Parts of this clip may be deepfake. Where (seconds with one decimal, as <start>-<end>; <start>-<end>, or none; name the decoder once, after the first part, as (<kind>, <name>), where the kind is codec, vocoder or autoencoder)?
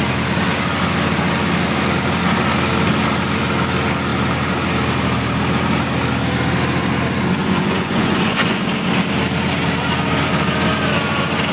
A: 7.4-8.6 (vocoder, Vocos)